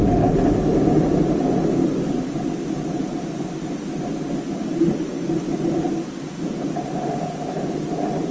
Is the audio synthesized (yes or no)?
no